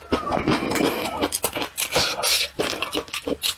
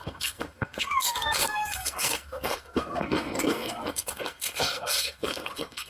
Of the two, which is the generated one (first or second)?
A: second